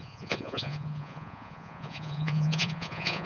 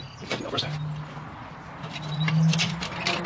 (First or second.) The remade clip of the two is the first